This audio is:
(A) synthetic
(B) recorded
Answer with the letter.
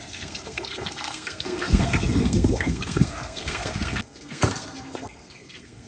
A